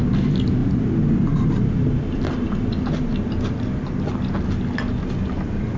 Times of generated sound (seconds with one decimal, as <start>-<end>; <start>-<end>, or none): none